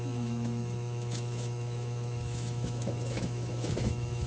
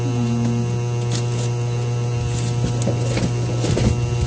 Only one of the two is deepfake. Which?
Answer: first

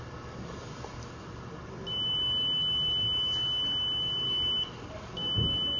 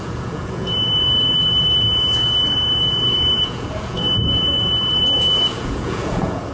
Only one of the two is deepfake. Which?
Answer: second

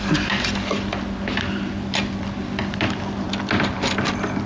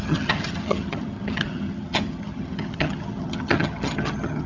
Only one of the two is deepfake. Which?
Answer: second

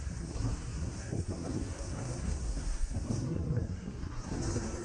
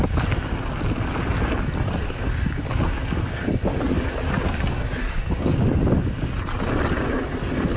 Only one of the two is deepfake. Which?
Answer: first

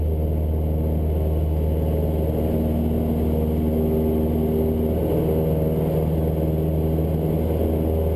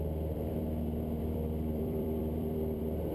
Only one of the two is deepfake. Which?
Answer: second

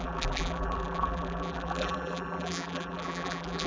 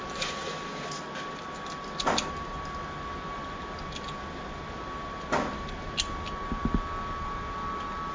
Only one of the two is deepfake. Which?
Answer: first